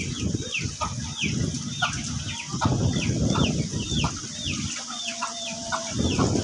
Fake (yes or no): no